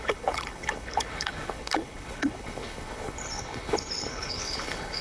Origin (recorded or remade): remade